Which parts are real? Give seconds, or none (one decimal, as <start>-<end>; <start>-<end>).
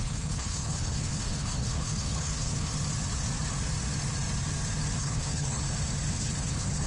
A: 2.7-5.0; 5.6-6.1